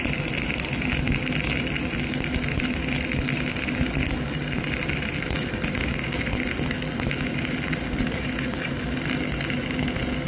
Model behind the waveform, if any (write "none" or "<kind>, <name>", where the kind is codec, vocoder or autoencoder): none